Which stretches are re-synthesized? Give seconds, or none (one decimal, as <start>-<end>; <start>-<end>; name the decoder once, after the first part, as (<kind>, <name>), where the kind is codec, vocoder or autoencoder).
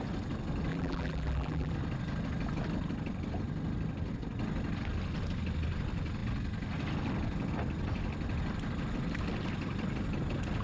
0.7-1.7 (vocoder, BigVGAN v2)